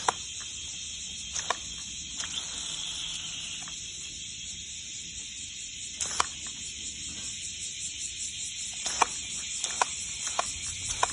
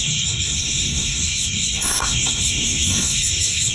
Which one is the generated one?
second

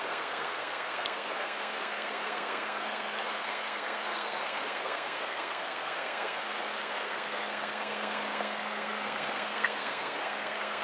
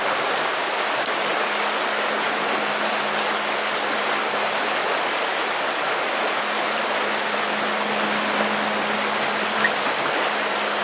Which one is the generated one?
first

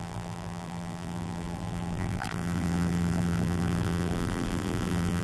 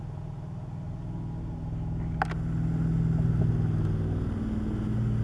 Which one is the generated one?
first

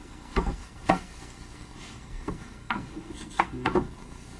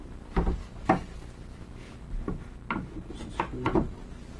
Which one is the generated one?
first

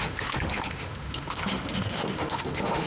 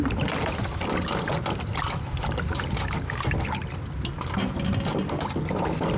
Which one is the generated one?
first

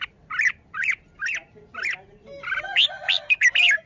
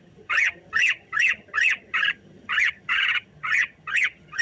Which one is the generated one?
second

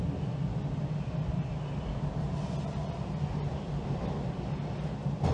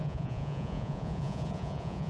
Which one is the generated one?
second